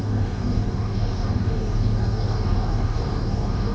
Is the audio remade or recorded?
remade